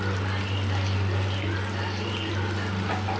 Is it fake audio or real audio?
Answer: real